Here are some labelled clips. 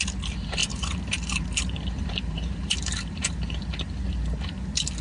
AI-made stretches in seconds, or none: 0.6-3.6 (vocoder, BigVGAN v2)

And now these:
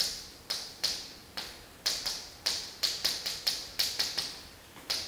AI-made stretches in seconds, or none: 0.0-5.1 (vocoder, BigVGAN v2)

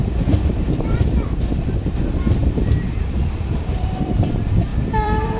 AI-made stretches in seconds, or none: 0.0-2.0 (vocoder, BigVGAN v2); 2.4-4.3; 4.7-5.4

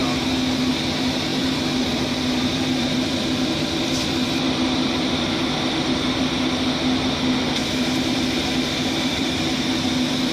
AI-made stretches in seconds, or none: 1.3-6.5 (vocoder, BigVGAN v2); 7.6-9.9